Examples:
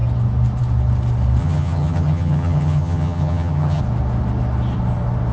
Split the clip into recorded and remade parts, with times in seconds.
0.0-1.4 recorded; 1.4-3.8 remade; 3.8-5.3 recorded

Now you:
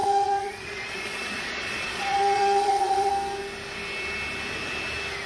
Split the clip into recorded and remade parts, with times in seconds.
0.0-3.1 remade; 3.1-5.3 recorded

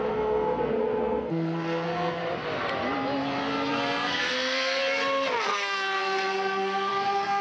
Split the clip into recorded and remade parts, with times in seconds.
0.0-2.2 remade; 2.2-3.7 recorded; 3.7-4.8 remade; 4.8-5.4 recorded; 5.4-7.4 remade

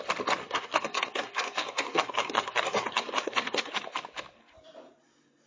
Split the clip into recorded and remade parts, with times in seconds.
0.0-0.4 recorded; 0.4-3.7 remade; 3.7-5.5 recorded

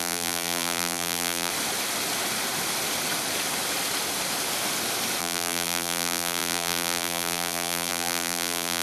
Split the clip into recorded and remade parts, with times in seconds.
0.0-1.5 remade; 1.5-5.2 recorded; 5.2-8.8 remade